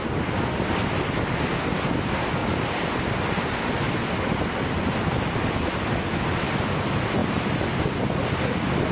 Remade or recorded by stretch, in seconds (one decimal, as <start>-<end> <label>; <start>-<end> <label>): 0.0-2.4 recorded; 2.4-5.0 remade; 5.0-8.9 recorded